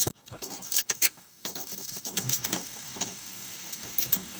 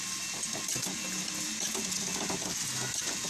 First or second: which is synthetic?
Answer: first